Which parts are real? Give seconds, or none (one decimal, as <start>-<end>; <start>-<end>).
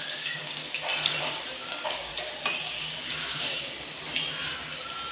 0.6-1.2; 2.1-2.6; 3.5-5.1